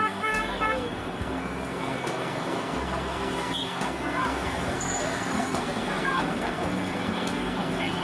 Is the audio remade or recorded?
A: remade